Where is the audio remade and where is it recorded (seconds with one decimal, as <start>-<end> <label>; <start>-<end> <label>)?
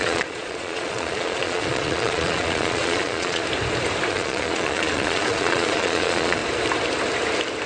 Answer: 0.0-3.4 remade; 3.4-4.1 recorded; 4.1-6.4 remade; 6.4-7.7 recorded